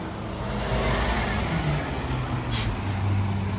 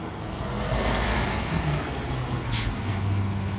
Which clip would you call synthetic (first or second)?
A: second